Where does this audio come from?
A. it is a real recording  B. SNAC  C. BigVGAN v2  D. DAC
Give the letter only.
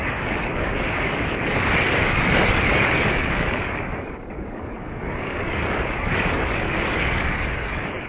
D